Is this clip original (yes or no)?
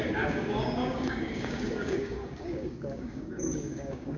no